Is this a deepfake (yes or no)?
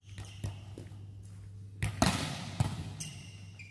no